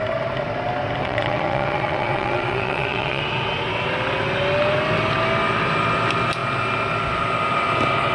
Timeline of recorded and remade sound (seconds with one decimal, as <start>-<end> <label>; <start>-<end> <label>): 0.0-1.0 recorded; 1.0-3.2 remade; 3.2-8.1 recorded